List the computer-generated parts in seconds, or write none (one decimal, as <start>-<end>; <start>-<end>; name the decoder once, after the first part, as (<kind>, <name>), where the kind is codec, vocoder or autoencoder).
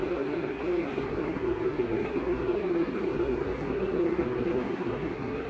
0.0-5.5 (codec, SNAC)